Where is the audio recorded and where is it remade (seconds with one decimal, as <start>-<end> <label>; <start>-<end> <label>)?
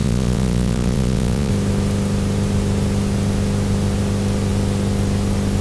0.0-1.5 remade; 1.5-5.6 recorded